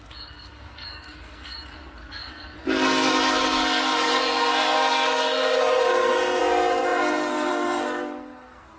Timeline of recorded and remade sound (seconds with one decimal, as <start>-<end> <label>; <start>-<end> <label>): 0.0-8.8 remade